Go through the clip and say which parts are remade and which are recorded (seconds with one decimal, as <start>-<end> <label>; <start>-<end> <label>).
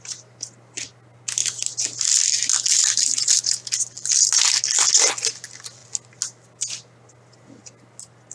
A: 0.0-8.3 recorded